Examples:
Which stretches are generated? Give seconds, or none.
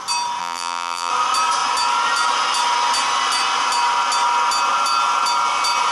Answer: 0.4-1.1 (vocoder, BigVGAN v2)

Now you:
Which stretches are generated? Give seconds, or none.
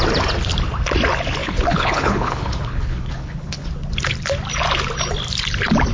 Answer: 1.4-3.7 (codec, HILCodec)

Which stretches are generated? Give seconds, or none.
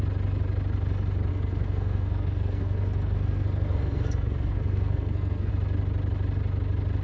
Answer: 1.3-5.5 (codec, SNAC)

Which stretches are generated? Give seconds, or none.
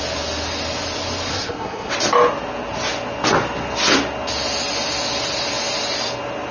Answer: 1.3-1.9 (codec, SNAC)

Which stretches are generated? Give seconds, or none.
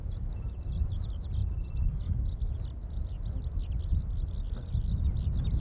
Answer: none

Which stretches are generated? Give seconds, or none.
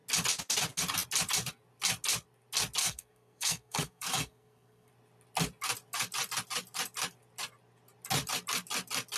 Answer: 2.8-4.9 (codec, SNAC)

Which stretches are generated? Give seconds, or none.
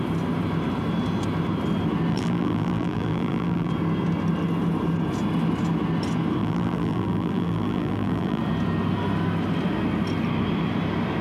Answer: 2.1-3.7 (vocoder, BigVGAN v2); 6.4-8.4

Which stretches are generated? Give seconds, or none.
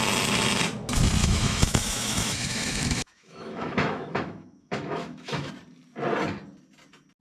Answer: 1.2-5.5 (autoencoder, DAC-VAE)